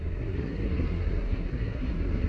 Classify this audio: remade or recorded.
remade